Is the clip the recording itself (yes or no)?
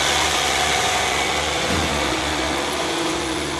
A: no